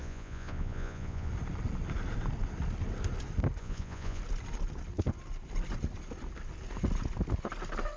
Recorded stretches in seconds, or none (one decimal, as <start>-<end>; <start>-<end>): 1.3-3.6; 4.2-8.0